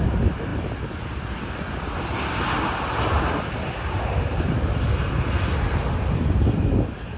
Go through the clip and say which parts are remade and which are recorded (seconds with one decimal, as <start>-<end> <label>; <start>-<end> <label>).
0.0-7.2 recorded